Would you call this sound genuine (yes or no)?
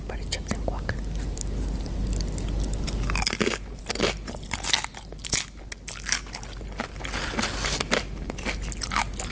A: yes